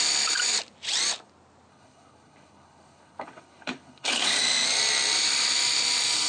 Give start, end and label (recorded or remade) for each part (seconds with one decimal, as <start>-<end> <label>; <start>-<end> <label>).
0.0-1.7 recorded; 1.7-4.4 remade; 4.4-6.3 recorded